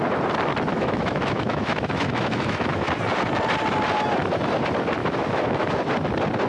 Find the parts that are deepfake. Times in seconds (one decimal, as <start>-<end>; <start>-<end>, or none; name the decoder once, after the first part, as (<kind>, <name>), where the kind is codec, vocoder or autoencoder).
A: 0.7-2.9 (autoencoder, DAC-VAE); 5.0-5.7